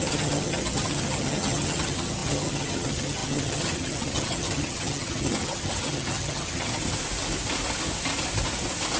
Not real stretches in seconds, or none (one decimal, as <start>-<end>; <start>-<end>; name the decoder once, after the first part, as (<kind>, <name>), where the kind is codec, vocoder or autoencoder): 0.0-6.8 (vocoder, HiFi-GAN)